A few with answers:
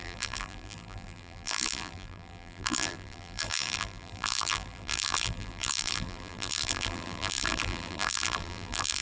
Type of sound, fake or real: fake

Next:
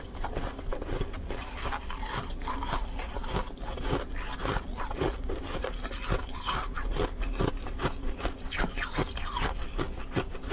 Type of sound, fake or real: real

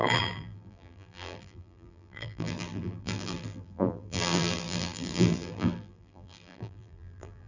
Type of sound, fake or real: fake